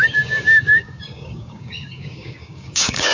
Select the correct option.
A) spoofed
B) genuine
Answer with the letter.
A